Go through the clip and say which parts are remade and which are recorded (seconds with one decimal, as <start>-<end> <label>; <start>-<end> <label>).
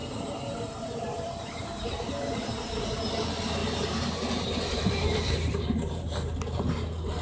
0.0-3.1 remade; 3.1-3.6 recorded; 3.6-6.2 remade; 6.2-7.2 recorded